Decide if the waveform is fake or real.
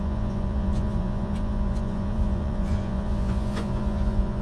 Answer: fake